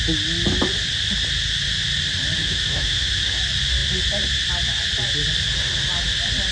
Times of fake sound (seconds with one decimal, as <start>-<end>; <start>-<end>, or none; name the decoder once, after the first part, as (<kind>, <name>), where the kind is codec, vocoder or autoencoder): 2.4-3.4 (autoencoder, DAC-VAE)